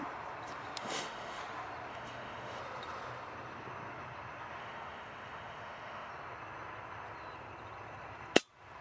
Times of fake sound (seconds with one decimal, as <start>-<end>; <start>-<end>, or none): 0.8-1.4; 1.9-2.6; 4.6-6.1